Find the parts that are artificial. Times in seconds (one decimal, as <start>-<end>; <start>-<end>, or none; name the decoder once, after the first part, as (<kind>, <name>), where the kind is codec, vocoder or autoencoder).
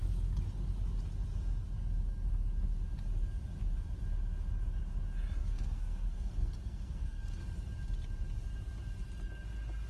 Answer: 5.4-7.4 (codec, SNAC)